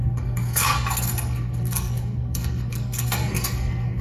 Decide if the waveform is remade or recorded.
remade